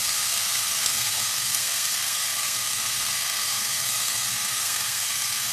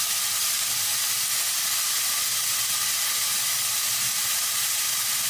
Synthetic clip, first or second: first